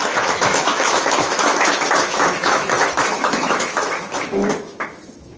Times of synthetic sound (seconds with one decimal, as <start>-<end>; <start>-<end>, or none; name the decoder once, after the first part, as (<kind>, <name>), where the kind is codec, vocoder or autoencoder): 0.0-5.4 (autoencoder, DAC-VAE)

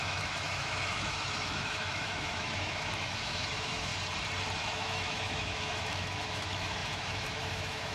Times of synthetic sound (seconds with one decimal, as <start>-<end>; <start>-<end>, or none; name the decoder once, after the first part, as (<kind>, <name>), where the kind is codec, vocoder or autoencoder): 0.0-3.9 (autoencoder, DAC-VAE); 4.6-7.9